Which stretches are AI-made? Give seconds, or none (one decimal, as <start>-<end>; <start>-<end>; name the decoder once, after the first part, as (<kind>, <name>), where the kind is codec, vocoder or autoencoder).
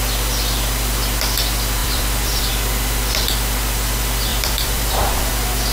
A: 1.8-2.5 (vocoder, BigVGAN v2); 4.3-5.3